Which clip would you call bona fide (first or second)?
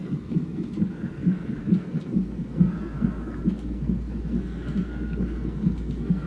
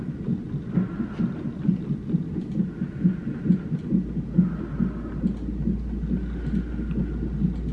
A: second